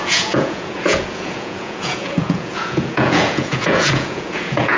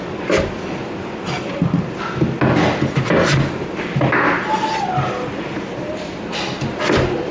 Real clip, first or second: second